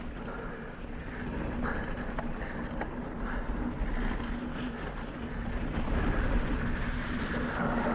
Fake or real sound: real